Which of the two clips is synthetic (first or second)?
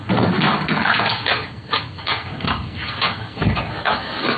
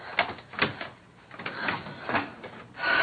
first